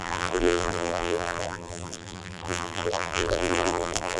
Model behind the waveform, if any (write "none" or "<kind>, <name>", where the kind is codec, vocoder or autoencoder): vocoder, BigVGAN v2